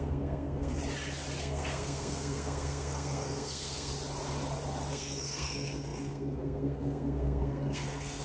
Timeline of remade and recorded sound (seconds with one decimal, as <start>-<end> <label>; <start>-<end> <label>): 0.0-0.8 remade; 0.8-1.4 recorded; 1.4-3.9 remade; 3.9-4.9 recorded; 4.9-8.2 remade